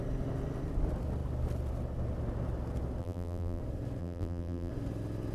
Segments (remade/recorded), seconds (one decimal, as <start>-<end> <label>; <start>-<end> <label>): 0.0-3.0 recorded; 3.0-3.6 remade; 3.6-4.0 recorded; 4.0-4.7 remade; 4.7-5.3 recorded